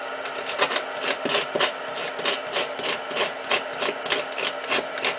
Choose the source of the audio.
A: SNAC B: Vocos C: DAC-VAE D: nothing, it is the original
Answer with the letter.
D